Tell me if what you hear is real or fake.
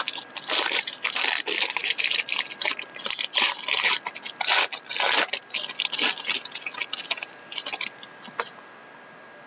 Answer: real